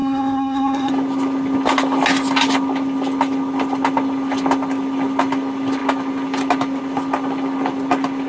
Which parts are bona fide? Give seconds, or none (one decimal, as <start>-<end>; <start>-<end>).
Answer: 0.9-8.3